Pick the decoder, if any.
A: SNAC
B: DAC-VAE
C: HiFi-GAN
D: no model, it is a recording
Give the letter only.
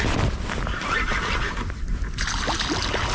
D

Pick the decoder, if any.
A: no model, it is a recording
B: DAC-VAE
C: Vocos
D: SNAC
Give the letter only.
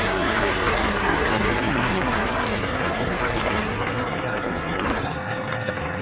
D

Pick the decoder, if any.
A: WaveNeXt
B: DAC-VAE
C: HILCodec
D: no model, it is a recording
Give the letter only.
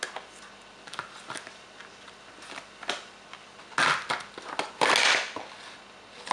D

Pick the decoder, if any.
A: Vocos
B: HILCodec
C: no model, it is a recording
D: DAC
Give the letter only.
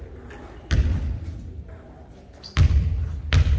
C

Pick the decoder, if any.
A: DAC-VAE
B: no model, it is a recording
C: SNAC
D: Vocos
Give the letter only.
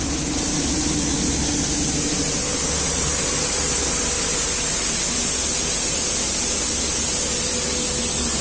B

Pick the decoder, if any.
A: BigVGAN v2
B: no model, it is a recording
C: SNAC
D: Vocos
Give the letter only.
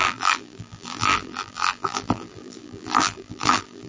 A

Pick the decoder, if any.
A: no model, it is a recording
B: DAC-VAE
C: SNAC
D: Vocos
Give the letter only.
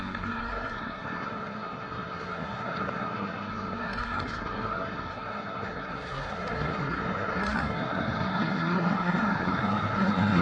C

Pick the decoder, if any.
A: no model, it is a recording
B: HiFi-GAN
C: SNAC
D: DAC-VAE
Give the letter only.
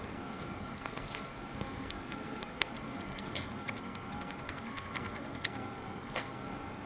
C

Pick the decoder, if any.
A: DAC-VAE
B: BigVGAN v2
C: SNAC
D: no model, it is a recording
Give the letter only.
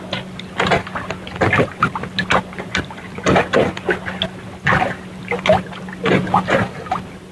D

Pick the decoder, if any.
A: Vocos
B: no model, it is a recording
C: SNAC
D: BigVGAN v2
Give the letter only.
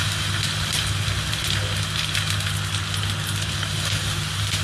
B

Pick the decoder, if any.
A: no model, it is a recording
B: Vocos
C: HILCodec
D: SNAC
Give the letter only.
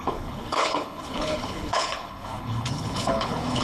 C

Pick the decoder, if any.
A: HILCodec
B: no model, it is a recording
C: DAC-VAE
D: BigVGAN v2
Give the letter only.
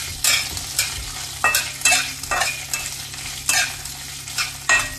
B